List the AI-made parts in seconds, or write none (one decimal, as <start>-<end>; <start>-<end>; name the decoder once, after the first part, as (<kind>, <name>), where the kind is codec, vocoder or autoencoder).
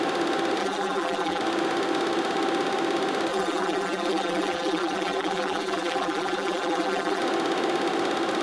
0.6-1.4 (vocoder, BigVGAN v2); 3.3-7.2